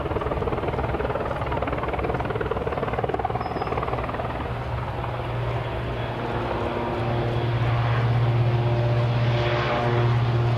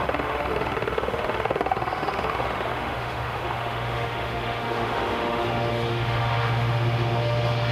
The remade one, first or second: second